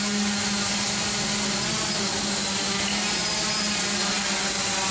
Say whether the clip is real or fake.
real